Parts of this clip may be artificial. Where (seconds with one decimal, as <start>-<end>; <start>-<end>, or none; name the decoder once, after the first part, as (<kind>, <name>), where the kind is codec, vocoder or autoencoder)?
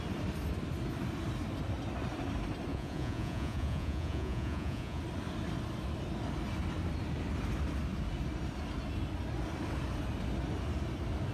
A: 2.7-5.0 (vocoder, Vocos)